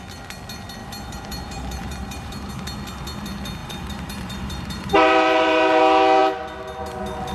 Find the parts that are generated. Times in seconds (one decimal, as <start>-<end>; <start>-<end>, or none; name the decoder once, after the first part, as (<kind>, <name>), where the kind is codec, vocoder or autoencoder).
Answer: 0.8-2.5 (vocoder, BigVGAN v2); 3.6-5.8